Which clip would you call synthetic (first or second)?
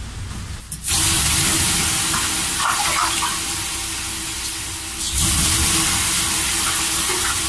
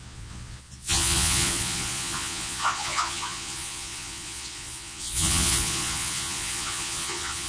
second